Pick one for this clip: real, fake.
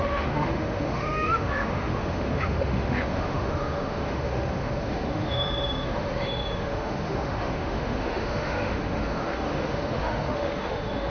fake